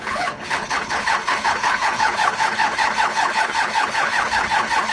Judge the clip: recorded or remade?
remade